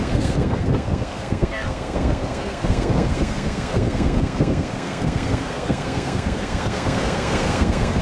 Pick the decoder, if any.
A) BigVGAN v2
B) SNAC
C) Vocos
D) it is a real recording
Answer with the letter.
B